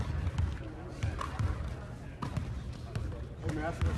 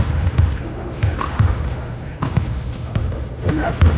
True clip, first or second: first